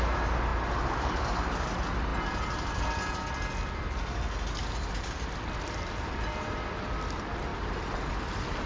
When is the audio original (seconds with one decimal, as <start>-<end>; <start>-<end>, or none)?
0.0-8.7